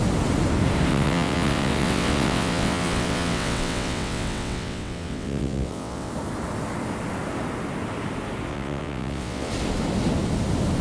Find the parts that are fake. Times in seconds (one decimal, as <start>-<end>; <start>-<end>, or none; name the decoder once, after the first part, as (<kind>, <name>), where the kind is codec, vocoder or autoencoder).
0.9-6.1 (vocoder, WaveNeXt); 8.5-9.5